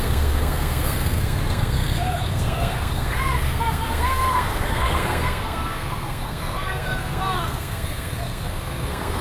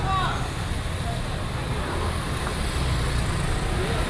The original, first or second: second